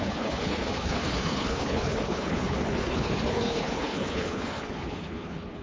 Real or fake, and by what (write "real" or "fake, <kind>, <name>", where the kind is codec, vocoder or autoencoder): fake, codec, HILCodec